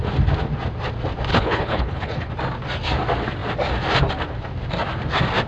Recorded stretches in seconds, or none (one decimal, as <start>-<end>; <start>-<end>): 0.0-1.3; 2.3-5.5